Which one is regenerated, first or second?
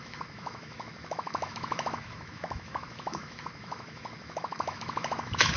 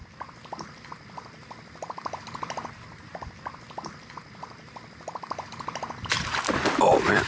first